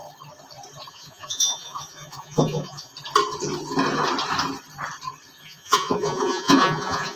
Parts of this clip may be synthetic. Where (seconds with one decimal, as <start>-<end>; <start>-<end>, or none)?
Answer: 0.9-2.9; 5.4-7.2